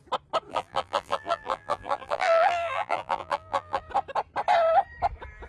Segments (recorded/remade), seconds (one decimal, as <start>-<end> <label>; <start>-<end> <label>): 0.0-0.5 recorded; 0.5-3.8 remade; 3.8-5.5 recorded

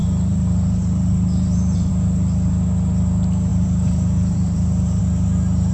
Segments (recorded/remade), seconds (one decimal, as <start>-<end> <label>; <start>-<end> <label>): 0.0-1.9 remade; 1.9-3.5 recorded; 3.5-5.0 remade; 5.0-5.7 recorded

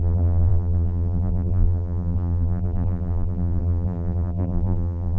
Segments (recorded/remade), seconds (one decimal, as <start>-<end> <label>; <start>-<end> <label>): 0.0-5.2 remade

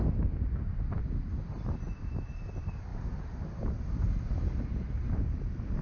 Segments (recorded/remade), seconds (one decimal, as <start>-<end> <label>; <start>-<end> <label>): 0.0-1.0 recorded; 1.0-1.8 remade; 1.8-2.9 recorded; 2.9-3.7 remade; 3.7-5.8 recorded

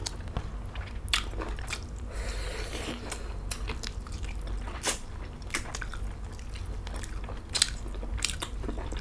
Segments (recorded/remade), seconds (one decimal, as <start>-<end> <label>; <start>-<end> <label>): 0.0-8.1 recorded; 8.1-9.0 remade